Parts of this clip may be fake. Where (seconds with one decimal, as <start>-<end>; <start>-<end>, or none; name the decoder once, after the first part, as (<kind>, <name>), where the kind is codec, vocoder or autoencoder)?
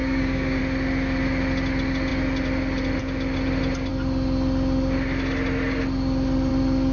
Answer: 0.0-0.6 (codec, DAC)